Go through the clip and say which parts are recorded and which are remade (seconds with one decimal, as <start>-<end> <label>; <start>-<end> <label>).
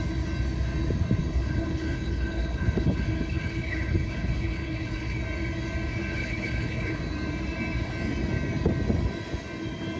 0.0-1.2 recorded; 1.2-5.2 remade; 5.2-6.1 recorded; 6.1-7.0 remade; 7.0-10.0 recorded